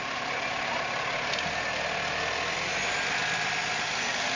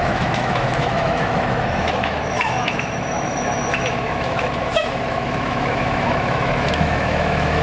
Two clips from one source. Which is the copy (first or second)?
second